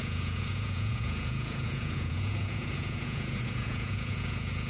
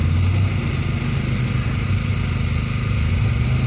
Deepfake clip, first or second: first